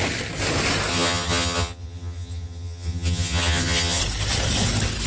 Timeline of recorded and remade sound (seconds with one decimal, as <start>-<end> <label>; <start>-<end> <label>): 0.0-0.9 recorded; 0.9-4.0 remade; 4.0-5.1 recorded